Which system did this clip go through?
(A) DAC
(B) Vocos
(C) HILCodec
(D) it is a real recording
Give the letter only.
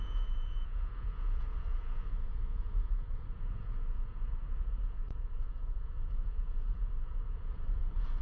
B